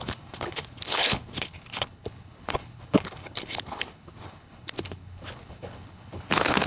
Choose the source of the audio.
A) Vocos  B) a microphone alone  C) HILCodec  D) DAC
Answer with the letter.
C